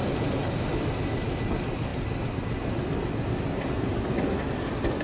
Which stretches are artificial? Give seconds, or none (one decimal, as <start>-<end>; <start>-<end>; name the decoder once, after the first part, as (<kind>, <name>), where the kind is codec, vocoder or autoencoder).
none

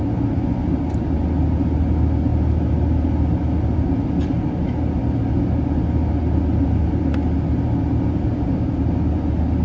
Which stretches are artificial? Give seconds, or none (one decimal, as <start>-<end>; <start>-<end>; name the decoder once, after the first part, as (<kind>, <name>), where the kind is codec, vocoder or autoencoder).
none